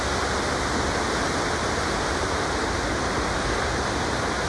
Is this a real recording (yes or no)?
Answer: yes